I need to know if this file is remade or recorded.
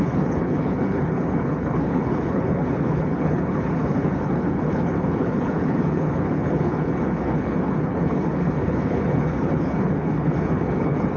remade